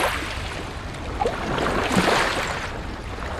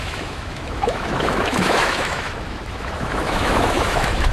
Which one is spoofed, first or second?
second